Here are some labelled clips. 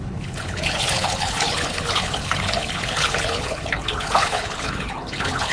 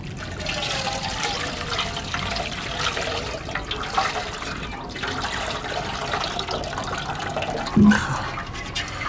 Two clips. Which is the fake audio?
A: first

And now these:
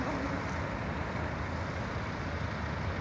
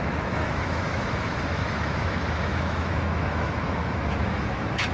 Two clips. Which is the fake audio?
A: second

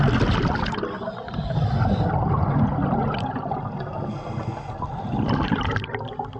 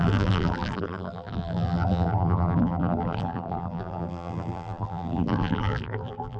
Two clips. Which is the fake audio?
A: second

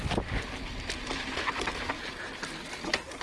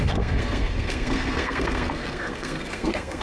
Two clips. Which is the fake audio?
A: second